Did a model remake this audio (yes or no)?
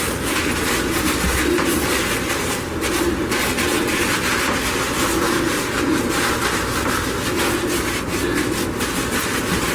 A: no